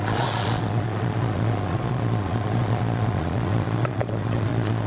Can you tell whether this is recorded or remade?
remade